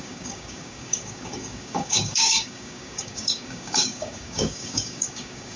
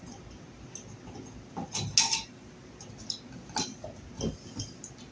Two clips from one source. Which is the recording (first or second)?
second